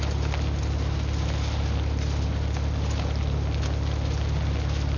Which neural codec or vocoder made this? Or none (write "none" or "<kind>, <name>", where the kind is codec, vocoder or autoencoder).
none